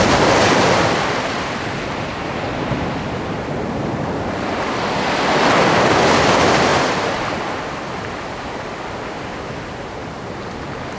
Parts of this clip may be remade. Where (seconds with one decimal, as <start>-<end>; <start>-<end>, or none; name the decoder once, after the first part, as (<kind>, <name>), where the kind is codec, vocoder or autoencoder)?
none